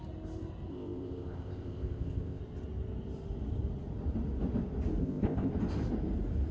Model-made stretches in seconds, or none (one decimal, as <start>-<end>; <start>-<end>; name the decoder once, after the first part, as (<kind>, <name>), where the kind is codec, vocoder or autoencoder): 0.7-2.4 (codec, ZipCodec); 5.0-5.5